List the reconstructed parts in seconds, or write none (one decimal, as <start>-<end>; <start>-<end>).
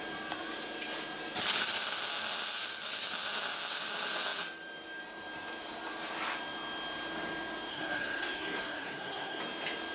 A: 7.7-9.4